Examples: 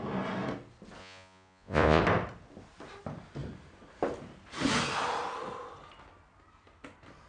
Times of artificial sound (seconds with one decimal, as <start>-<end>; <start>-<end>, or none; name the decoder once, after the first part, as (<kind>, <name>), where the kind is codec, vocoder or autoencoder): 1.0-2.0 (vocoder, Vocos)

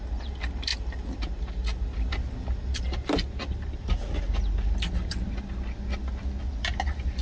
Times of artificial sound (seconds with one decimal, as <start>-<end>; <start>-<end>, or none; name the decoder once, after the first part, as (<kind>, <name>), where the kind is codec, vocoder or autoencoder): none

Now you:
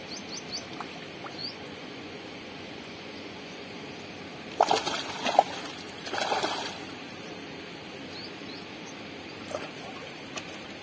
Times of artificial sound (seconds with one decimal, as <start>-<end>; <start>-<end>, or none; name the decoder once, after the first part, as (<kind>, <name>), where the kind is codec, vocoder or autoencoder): 1.4-3.9 (vocoder, Vocos)

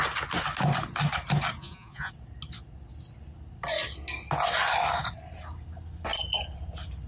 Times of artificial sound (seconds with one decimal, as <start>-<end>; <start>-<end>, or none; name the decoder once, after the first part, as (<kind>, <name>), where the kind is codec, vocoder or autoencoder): 1.6-2.1 (vocoder, Vocos)

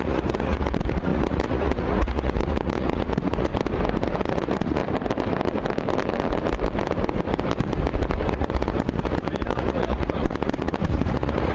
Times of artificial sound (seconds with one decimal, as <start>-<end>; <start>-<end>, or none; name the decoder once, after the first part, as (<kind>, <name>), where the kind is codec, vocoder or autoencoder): 0.0-3.5 (vocoder, Vocos); 4.2-4.8; 8.3-11.5

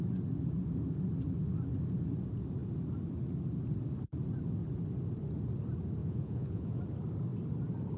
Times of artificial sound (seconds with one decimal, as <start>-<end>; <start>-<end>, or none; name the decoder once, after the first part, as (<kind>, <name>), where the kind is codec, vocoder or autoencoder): 6.0-6.8 (vocoder, Vocos)

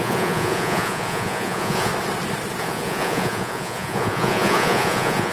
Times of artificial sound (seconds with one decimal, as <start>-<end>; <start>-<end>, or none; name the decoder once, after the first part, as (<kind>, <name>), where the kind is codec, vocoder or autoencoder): 0.0-1.9 (vocoder, Vocos); 2.6-5.3

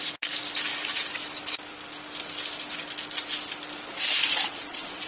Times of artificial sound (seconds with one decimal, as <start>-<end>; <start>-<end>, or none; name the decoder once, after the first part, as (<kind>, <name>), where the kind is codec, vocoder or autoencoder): 3.9-5.1 (vocoder, Vocos)